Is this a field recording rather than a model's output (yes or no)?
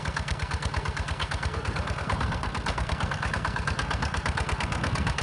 no